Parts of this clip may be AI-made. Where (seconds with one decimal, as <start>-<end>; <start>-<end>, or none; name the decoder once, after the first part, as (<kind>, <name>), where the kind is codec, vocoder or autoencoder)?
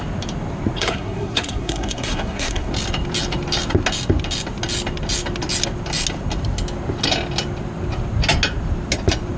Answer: 0.8-2.7 (codec, SNAC)